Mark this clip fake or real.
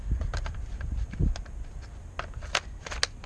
real